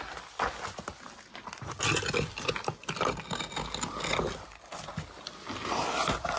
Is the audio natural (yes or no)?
yes